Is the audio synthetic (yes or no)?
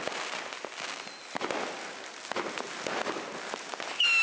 no